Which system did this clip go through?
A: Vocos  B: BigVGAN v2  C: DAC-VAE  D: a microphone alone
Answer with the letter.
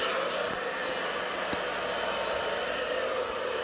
D